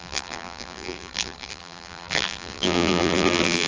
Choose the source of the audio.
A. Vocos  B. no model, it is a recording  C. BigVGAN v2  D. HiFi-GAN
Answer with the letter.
C